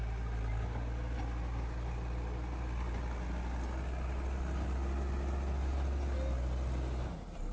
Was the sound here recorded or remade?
recorded